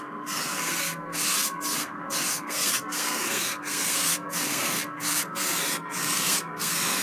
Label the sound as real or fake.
fake